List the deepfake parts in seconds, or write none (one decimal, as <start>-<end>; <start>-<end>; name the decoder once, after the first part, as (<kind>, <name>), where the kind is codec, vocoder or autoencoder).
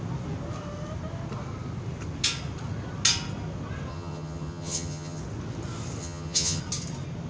3.9-5.2 (vocoder, HiFi-GAN); 6.0-6.6